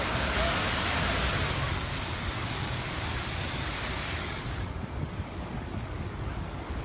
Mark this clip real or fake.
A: fake